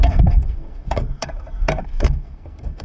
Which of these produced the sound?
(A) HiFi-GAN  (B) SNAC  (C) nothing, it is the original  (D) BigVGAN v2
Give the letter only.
B